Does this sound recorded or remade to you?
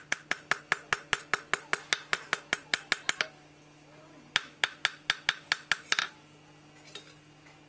recorded